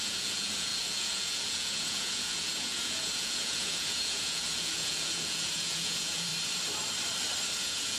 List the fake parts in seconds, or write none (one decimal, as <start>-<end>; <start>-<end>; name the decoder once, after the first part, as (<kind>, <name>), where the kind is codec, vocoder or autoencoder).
0.0-6.3 (vocoder, Vocos); 7.6-8.0